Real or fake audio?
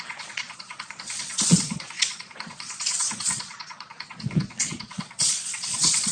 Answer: fake